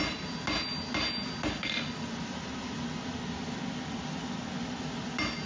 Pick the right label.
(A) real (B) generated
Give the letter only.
A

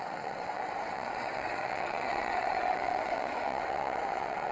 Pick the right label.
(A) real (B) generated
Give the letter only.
B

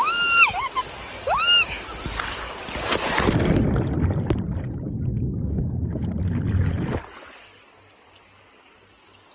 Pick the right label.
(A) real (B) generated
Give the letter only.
A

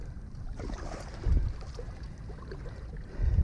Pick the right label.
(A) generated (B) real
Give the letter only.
A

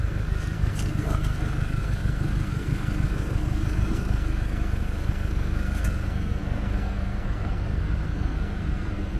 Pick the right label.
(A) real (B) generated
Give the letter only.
B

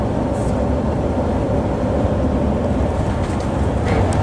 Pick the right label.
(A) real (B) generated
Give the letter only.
A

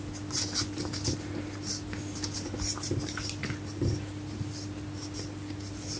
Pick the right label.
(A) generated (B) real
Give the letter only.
B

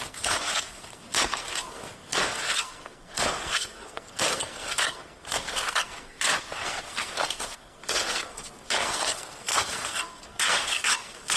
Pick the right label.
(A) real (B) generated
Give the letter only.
B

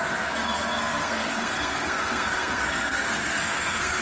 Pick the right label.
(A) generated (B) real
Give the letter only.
A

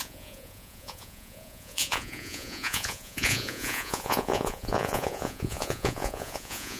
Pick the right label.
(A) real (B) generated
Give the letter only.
B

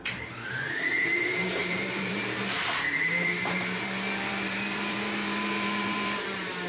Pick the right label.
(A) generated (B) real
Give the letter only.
A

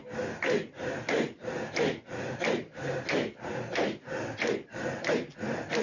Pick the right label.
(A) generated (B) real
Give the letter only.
B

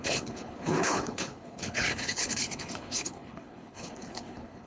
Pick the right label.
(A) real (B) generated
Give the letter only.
B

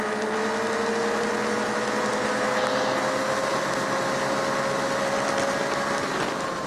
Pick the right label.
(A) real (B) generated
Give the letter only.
A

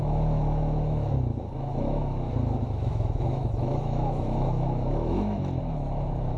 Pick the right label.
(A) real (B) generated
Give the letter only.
B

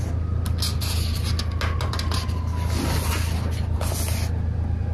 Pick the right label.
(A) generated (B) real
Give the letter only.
B